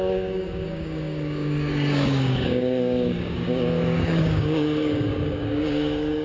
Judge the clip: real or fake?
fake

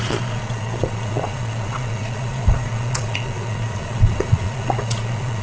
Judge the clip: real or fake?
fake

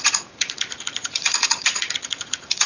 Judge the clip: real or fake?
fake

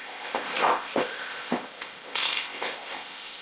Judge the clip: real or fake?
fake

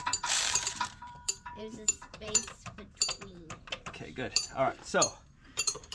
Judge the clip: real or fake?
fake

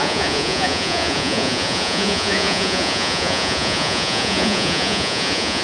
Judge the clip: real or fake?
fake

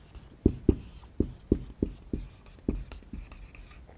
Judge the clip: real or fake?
real